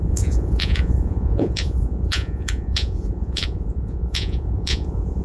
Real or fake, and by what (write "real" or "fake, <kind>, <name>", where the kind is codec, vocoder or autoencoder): fake, vocoder, Vocos